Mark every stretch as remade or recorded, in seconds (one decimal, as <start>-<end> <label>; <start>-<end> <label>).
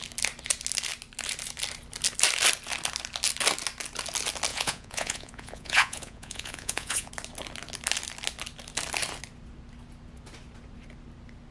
0.0-4.5 recorded; 4.5-7.1 remade; 7.1-11.5 recorded